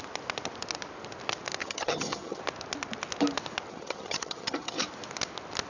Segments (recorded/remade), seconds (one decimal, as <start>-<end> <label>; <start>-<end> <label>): 0.0-1.6 recorded; 1.6-2.4 remade; 2.4-3.7 recorded; 3.7-4.8 remade; 4.8-5.7 recorded